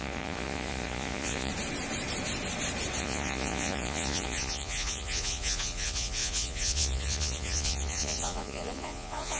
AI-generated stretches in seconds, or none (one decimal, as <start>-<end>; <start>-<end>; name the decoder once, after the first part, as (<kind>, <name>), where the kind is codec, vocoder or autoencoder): 0.0-1.5 (vocoder, Vocos); 3.0-9.4